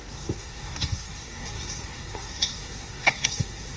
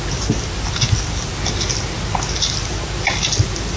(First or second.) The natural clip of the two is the second